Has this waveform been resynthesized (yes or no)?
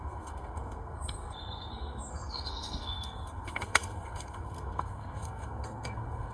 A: yes